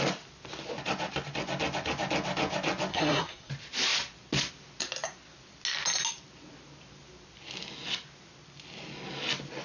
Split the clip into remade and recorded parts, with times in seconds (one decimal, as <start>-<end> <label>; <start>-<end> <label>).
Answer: 0.0-2.9 recorded; 2.9-3.5 remade; 3.5-9.6 recorded